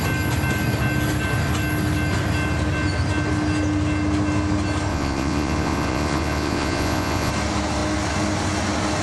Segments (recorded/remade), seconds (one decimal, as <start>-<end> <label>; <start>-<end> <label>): 0.0-4.9 recorded; 4.9-7.3 remade; 7.3-9.0 recorded